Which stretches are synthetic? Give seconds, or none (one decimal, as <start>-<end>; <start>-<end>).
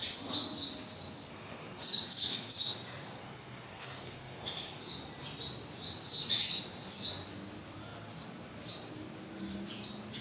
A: 1.3-2.5; 3.2-5.0